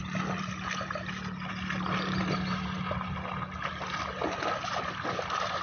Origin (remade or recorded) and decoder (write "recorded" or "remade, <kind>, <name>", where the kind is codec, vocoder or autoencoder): recorded